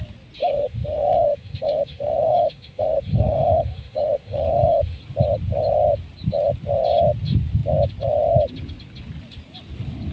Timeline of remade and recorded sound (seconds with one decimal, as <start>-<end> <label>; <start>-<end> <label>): 0.0-0.4 recorded; 0.4-5.0 remade; 5.0-10.1 recorded